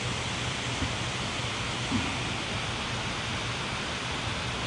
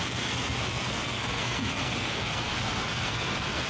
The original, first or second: first